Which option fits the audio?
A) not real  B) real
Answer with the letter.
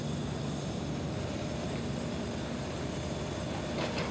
B